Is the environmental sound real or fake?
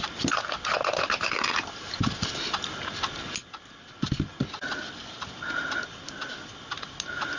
real